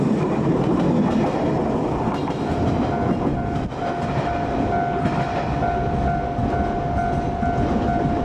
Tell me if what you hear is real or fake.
real